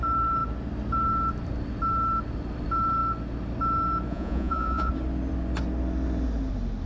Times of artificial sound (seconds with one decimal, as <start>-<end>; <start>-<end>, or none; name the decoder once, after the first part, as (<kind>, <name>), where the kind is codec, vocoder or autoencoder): 4.1-4.9 (vocoder, Vocos)